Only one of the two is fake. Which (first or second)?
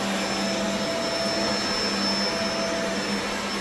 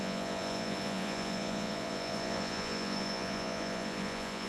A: second